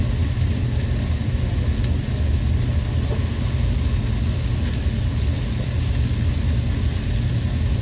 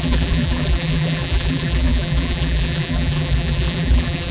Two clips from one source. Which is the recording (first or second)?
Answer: first